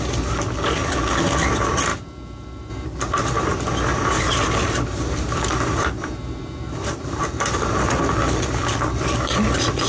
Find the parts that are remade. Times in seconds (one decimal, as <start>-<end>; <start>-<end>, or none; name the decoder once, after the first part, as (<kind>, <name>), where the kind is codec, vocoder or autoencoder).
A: 1.9-2.7 (vocoder, BigVGAN v2); 3.9-7.2